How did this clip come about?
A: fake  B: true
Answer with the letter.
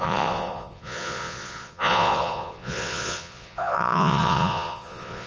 A